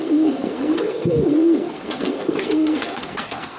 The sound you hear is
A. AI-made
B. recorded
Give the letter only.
A